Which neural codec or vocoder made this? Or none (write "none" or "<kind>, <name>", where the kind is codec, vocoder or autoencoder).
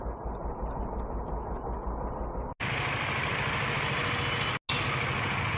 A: none